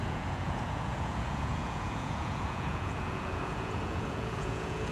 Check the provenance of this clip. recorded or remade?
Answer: remade